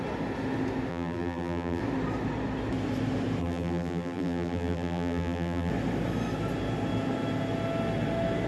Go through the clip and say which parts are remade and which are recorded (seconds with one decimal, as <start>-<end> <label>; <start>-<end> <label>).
0.0-0.9 recorded; 0.9-1.8 remade; 1.8-3.4 recorded; 3.4-5.7 remade; 5.7-8.5 recorded